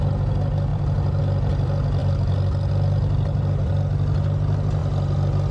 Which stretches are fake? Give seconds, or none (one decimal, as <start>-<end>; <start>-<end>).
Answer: 0.7-1.2; 2.0-3.7